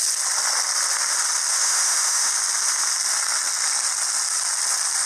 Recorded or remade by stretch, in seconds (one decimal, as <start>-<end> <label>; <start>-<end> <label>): 0.0-1.5 recorded; 1.5-2.3 remade; 2.3-5.1 recorded